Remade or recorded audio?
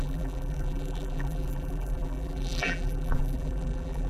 remade